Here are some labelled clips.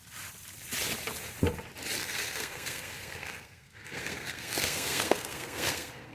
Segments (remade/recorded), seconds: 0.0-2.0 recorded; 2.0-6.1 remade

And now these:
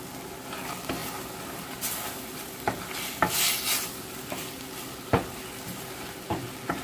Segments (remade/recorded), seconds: 0.0-6.8 recorded

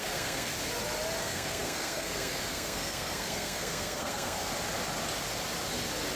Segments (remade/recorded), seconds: 0.0-0.5 remade; 0.5-1.2 recorded; 1.2-4.5 remade; 4.5-6.2 recorded

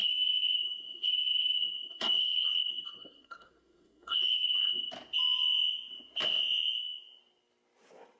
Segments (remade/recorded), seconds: 0.0-4.9 remade; 4.9-8.2 recorded